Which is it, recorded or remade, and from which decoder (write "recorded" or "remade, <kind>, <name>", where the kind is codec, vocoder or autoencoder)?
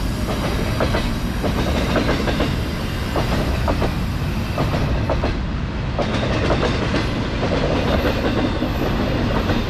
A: recorded